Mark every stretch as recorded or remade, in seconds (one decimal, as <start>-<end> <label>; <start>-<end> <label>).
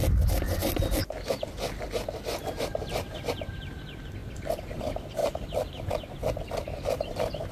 0.0-4.2 recorded; 4.2-4.8 remade; 4.8-7.5 recorded